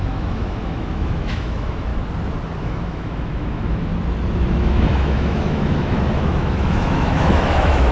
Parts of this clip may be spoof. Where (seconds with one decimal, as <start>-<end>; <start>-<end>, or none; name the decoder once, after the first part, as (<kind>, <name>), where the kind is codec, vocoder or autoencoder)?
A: 0.0-1.9 (autoencoder, DAC-VAE); 2.6-3.9; 4.6-7.9